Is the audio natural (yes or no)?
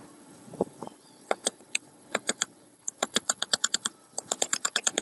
no